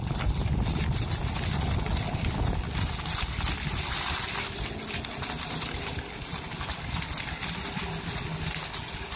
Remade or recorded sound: recorded